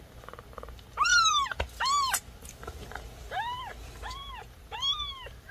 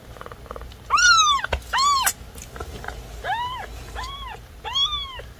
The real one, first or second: second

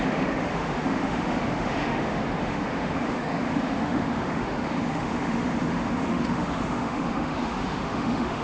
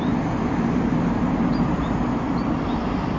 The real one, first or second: second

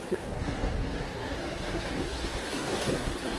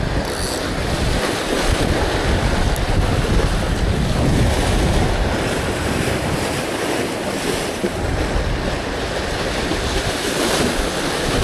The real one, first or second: second